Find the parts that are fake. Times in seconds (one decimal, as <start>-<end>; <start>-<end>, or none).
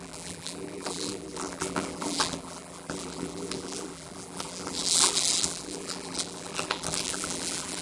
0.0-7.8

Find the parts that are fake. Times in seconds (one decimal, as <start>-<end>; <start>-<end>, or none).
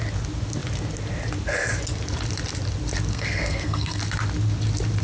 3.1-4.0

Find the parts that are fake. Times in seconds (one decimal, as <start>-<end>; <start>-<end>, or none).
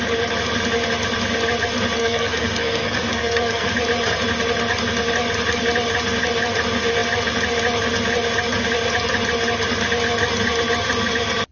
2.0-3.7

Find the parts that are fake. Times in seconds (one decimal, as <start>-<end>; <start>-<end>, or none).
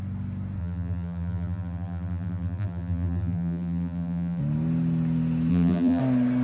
0.6-4.4; 5.5-6.0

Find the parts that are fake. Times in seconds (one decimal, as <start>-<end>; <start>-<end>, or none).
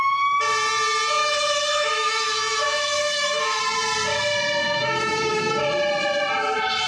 1.2-3.6; 4.6-5.6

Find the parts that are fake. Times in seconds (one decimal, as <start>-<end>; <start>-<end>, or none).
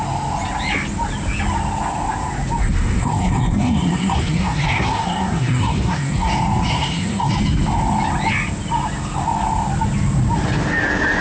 2.6-6.3; 6.7-7.3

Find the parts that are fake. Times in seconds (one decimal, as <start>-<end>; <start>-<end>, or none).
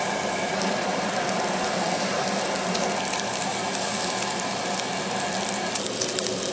0.0-3.5